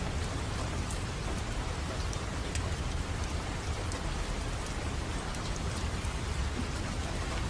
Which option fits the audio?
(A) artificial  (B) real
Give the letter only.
B